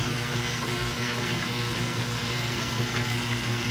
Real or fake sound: fake